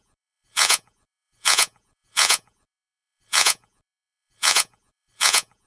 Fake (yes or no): yes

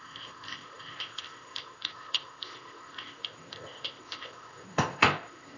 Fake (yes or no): yes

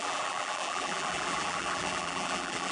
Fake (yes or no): yes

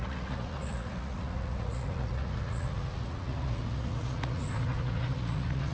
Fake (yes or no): yes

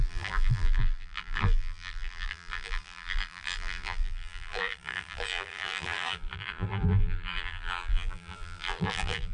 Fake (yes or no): yes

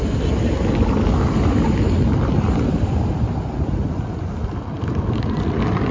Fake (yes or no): no